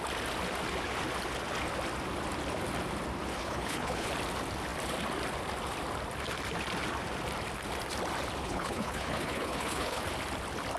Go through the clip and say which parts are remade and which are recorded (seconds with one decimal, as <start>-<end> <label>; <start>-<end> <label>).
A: 0.0-3.4 recorded; 3.4-4.1 remade; 4.1-8.4 recorded; 8.4-10.0 remade; 10.0-10.8 recorded